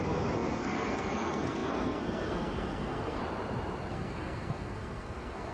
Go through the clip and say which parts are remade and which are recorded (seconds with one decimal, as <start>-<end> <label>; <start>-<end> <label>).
0.0-3.2 remade; 3.2-3.9 recorded; 3.9-5.5 remade